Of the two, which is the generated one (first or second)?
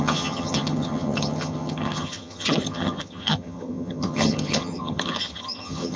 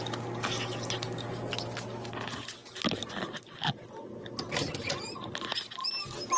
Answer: first